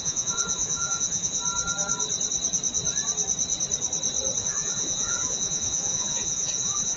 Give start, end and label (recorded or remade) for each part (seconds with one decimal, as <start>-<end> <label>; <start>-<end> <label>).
0.0-1.4 remade; 1.4-4.4 recorded; 4.4-7.0 remade